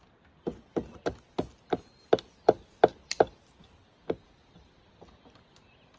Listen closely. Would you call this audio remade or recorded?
recorded